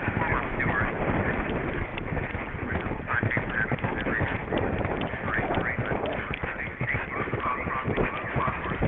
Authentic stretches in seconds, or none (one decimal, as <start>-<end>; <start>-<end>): 0.0-8.9